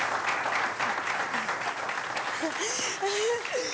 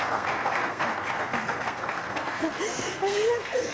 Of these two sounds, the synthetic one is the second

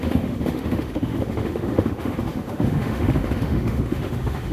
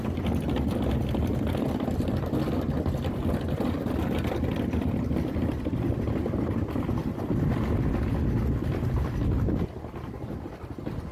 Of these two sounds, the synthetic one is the first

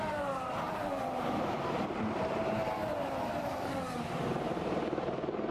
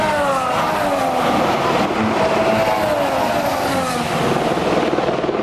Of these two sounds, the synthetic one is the first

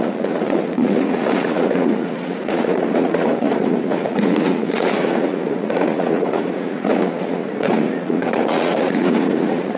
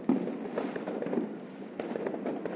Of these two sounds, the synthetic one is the first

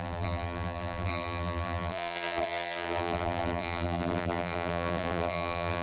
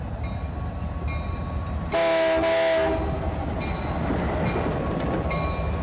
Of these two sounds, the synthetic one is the first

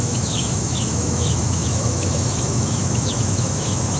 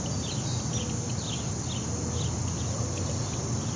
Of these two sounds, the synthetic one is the first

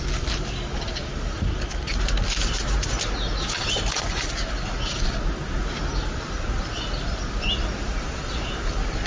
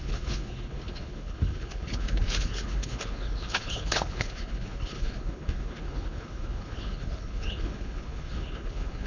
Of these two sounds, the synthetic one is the second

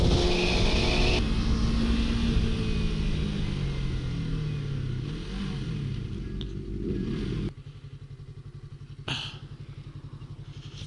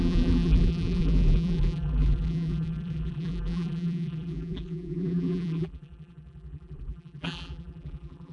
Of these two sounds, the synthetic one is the second